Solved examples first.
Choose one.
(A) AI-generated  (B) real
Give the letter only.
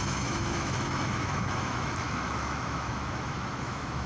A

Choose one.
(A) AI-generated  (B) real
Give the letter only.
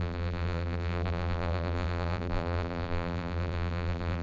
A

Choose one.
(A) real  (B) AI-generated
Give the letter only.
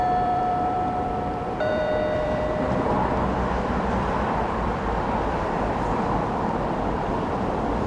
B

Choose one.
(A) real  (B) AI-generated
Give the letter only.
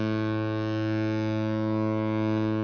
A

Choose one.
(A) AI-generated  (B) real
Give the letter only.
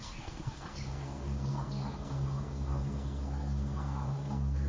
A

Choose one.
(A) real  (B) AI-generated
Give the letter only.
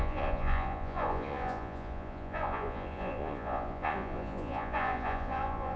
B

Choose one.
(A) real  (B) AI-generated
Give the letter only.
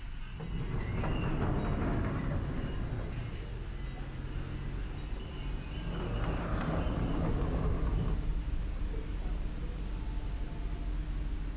A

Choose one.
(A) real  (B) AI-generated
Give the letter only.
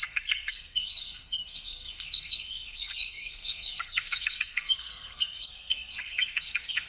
B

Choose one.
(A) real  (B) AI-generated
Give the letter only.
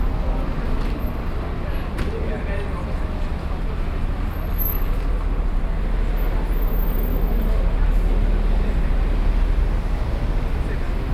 A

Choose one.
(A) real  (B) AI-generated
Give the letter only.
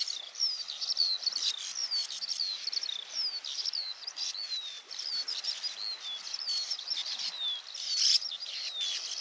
A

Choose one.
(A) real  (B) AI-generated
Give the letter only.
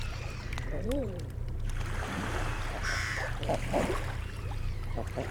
B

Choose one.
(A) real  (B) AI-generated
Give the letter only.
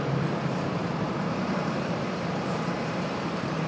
B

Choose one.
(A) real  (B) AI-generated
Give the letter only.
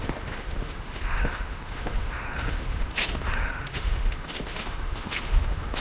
B